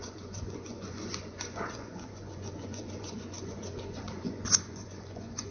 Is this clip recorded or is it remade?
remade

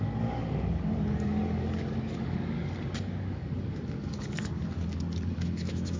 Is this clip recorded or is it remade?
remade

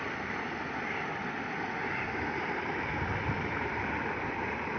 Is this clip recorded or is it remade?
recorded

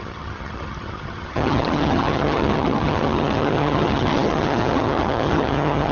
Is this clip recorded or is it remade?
remade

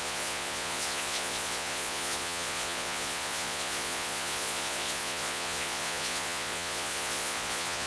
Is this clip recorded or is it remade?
remade